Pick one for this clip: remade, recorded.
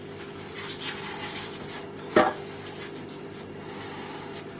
recorded